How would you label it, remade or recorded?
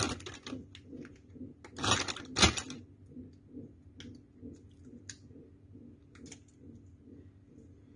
recorded